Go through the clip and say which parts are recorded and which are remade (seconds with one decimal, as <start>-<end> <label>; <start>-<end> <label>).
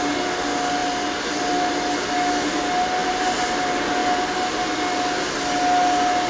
0.0-6.3 recorded